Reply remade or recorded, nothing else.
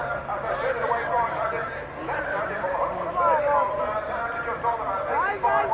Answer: recorded